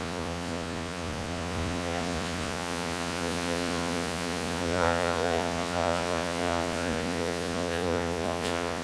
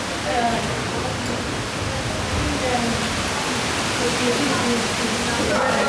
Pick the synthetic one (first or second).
first